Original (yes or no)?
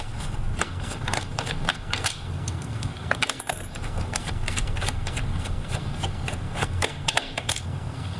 no